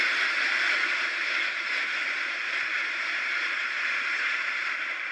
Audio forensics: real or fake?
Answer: fake